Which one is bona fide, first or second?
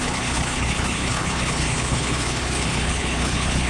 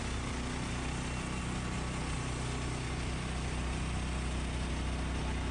second